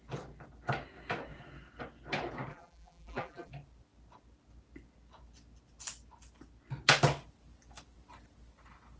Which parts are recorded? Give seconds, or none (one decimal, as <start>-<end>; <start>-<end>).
0.0-2.5; 3.5-9.0